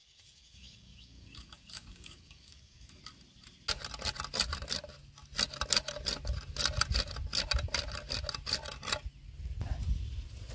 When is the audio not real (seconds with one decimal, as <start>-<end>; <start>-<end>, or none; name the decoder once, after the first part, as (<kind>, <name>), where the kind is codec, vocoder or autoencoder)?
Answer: 0.0-3.0 (codec, DAC)